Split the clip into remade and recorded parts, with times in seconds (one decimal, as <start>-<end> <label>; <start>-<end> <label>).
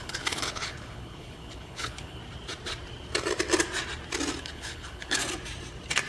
0.0-2.2 remade; 2.2-4.4 recorded; 4.4-5.2 remade; 5.2-6.1 recorded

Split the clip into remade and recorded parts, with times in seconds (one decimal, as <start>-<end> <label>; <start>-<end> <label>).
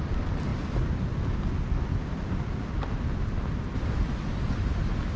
0.0-0.5 recorded; 0.5-1.2 remade; 1.2-1.9 recorded; 1.9-4.7 remade; 4.7-5.2 recorded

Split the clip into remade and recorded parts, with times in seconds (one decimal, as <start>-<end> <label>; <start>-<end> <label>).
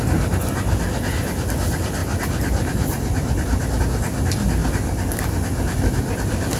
0.0-2.0 recorded; 2.0-3.8 remade; 3.8-6.6 recorded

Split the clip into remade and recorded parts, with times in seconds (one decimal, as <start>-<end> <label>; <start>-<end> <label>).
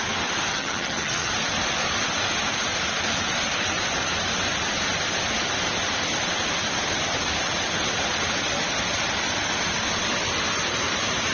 0.0-0.5 recorded; 0.5-1.3 remade; 1.3-11.3 recorded